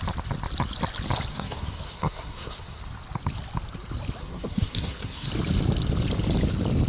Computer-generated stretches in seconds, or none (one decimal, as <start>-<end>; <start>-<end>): 1.3-2.8; 4.2-5.3